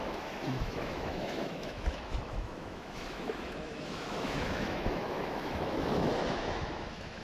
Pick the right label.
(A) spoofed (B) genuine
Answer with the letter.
A